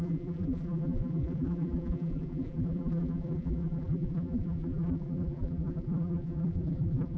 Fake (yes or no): yes